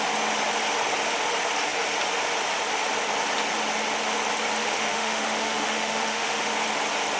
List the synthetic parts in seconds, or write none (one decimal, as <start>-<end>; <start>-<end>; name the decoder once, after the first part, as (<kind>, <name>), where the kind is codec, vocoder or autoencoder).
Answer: 4.6-6.5 (autoencoder, DAC-VAE)